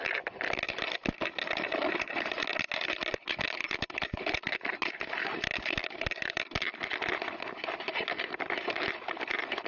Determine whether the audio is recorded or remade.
recorded